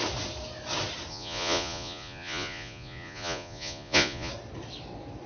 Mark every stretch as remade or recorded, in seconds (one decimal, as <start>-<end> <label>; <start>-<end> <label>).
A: 0.0-1.1 recorded; 1.1-4.3 remade; 4.3-5.3 recorded